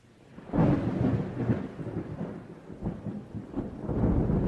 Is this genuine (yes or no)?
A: yes